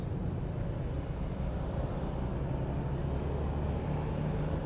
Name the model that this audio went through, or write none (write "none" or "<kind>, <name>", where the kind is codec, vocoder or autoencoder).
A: none